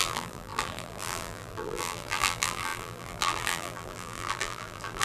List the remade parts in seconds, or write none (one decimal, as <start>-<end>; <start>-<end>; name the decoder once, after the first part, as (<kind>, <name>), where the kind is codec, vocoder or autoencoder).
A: 0.0-5.0 (vocoder, BigVGAN v2)